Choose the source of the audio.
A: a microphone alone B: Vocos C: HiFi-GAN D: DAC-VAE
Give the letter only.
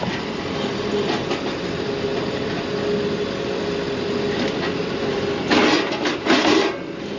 A